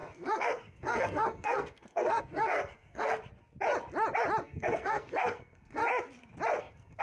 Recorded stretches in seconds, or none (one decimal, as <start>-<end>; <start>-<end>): 3.2-4.4; 5.8-6.6